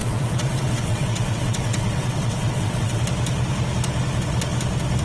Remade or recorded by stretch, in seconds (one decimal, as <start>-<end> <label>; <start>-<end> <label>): 0.0-3.0 remade; 3.0-5.0 recorded